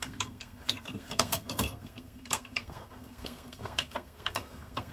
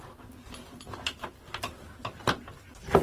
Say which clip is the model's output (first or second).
first